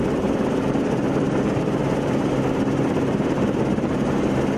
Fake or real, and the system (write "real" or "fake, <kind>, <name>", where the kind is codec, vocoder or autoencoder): fake, vocoder, BigVGAN v2